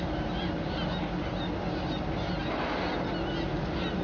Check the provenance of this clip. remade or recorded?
recorded